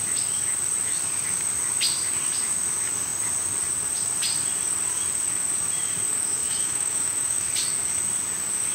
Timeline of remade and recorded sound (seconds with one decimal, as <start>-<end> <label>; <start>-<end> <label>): 0.0-6.4 recorded; 6.4-7.5 remade; 7.5-8.7 recorded